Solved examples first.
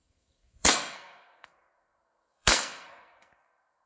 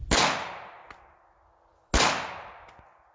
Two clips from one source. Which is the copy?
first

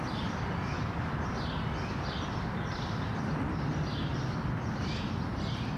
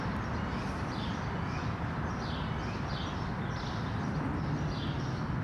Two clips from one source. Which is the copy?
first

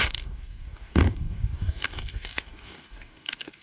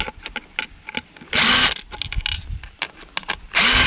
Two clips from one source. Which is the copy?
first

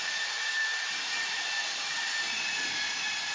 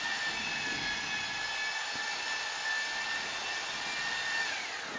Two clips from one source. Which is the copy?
first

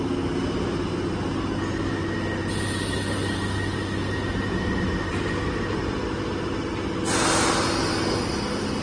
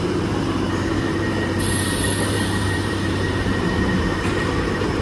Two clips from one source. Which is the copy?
second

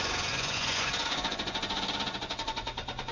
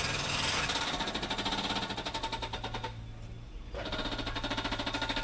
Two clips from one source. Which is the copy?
first